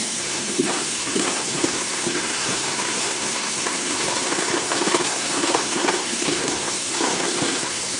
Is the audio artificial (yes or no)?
yes